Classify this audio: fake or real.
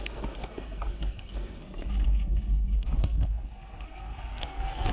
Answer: fake